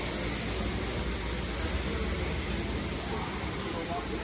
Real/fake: real